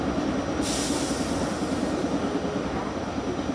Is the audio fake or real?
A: real